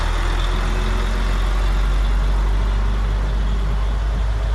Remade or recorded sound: recorded